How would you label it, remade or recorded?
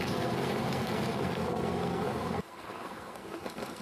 remade